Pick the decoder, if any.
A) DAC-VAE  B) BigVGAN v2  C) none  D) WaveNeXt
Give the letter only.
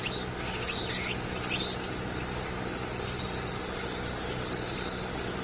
C